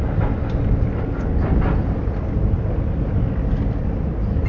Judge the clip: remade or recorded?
recorded